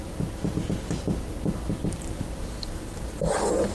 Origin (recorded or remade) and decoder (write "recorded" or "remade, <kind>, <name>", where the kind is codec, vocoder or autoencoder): recorded